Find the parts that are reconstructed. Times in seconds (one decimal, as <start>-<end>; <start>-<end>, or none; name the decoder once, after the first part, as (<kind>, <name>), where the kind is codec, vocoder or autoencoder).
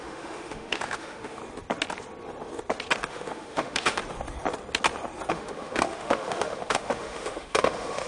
0.0-1.4 (autoencoder, DAC-VAE); 3.1-4.0; 5.3-8.1